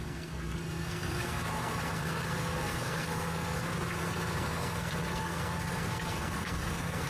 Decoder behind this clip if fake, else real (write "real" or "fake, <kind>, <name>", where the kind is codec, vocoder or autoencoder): fake, codec, SNAC